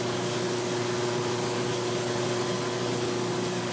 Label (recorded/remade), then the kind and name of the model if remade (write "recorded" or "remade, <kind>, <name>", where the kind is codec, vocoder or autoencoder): remade, codec, DAC